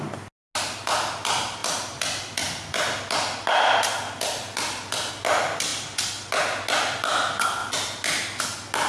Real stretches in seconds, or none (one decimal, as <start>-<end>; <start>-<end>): 0.0-8.9

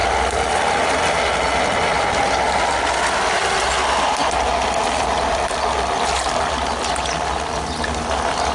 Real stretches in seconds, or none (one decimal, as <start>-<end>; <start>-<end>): 0.0-8.5

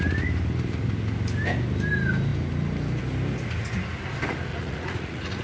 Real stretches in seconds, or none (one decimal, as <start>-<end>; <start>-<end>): 0.0-4.5

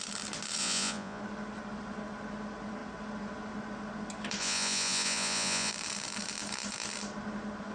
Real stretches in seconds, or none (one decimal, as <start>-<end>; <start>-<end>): 0.0-0.6; 1.2-4.4; 5.7-7.7

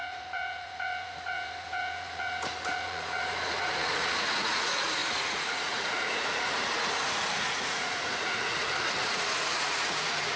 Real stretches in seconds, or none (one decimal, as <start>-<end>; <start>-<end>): none

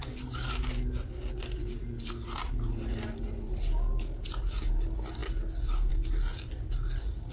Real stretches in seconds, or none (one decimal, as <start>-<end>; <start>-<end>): 0.0-7.3

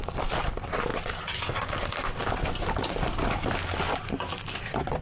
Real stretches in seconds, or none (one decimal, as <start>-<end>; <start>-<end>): 0.0-5.0

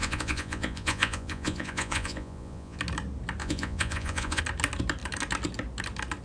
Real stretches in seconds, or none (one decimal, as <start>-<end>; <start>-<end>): 2.8-3.4; 4.4-6.2